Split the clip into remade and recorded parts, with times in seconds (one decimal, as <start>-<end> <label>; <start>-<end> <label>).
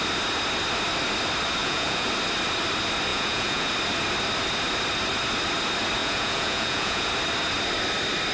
0.0-1.6 recorded; 1.6-2.1 remade; 2.1-3.1 recorded; 3.1-3.7 remade; 3.7-6.0 recorded; 6.0-7.1 remade; 7.1-8.3 recorded